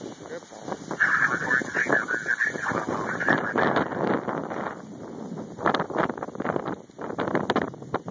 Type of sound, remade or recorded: recorded